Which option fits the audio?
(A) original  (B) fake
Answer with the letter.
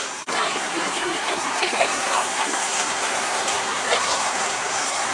B